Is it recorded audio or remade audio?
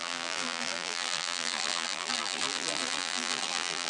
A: remade